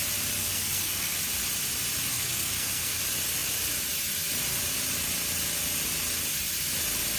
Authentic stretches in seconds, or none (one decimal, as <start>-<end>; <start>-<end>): 0.0-0.4; 1.2-2.1; 3.0-7.2